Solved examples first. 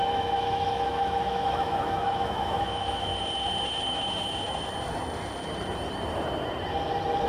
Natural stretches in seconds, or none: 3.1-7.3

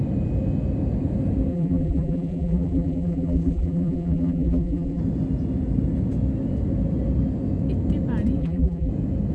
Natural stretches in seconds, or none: 0.0-1.5; 5.0-8.4; 8.9-9.3

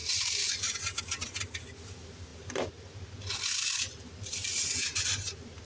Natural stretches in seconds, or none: 1.0-2.3

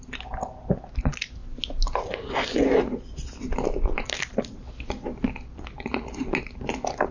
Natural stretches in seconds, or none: 0.0-7.1

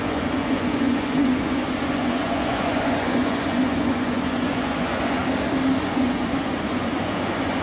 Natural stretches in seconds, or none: 5.2-5.8

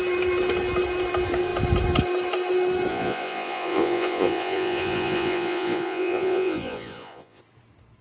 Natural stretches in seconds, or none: 0.0-2.9; 7.4-8.0

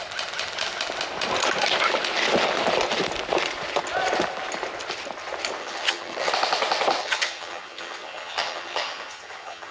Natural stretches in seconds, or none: 0.0-5.6; 6.3-7.0

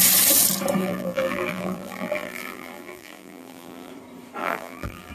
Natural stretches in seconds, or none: 0.0-0.8; 3.9-4.4